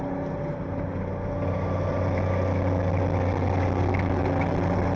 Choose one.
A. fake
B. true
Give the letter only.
B